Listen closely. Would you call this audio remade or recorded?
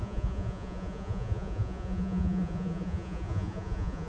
remade